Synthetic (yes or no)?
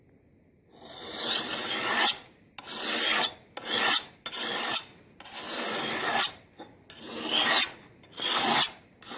no